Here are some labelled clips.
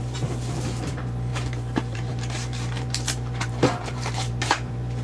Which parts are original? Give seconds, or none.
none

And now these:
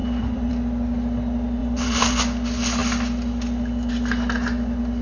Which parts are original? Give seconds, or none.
0.5-1.6; 2.2-5.0

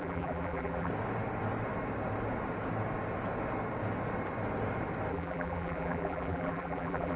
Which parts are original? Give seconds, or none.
0.9-5.1

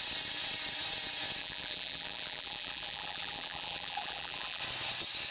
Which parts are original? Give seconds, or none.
0.0-1.4; 4.6-5.3

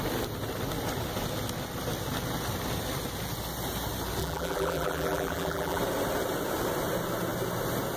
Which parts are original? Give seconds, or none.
0.0-4.2; 5.8-8.0

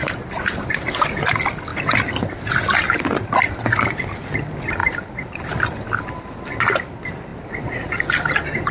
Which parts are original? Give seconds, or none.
0.0-8.7

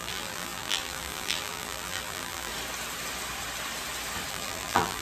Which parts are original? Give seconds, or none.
2.5-4.3

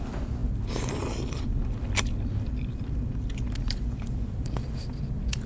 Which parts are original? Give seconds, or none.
none